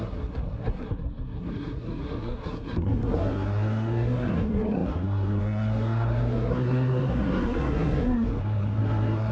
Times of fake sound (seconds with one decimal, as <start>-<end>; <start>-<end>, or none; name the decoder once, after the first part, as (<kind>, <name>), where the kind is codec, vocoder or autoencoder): 0.0-9.3 (codec, SNAC)

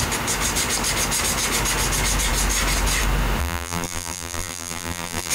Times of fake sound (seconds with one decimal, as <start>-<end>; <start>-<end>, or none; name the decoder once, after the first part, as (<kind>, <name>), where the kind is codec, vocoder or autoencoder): 3.4-5.3 (vocoder, BigVGAN v2)

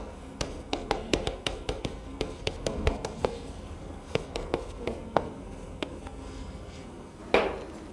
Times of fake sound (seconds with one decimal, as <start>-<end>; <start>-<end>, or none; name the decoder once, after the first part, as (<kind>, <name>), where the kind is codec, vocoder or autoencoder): 0.0-7.2 (codec, SNAC)

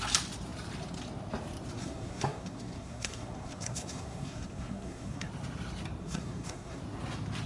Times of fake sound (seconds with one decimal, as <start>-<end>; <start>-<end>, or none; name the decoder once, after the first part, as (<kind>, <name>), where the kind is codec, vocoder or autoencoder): 1.8-5.3 (codec, SNAC); 6.0-6.8

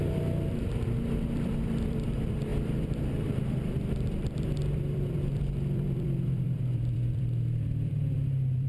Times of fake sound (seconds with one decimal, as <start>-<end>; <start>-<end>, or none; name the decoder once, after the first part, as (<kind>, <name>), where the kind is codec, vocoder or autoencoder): 0.0-8.7 (vocoder, BigVGAN v2)

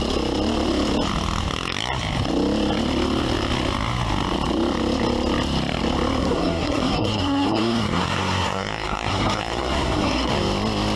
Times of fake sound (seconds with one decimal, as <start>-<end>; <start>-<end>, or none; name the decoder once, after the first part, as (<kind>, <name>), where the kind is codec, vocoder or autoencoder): 6.2-10.3 (codec, SNAC)

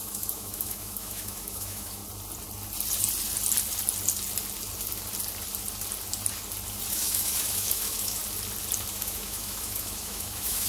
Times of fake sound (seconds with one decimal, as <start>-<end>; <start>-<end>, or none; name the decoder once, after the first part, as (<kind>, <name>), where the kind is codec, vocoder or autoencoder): 0.0-2.0 (autoencoder, DAC-VAE); 6.9-8.2; 8.9-10.7

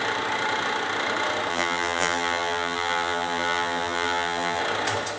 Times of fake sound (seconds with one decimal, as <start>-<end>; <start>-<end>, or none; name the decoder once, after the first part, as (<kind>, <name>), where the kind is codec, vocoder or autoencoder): 1.5-4.6 (vocoder, BigVGAN v2)